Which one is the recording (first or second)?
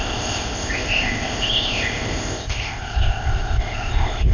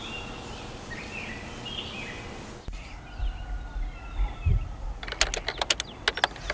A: second